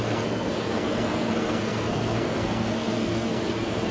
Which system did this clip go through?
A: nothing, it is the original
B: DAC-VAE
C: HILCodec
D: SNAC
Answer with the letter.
D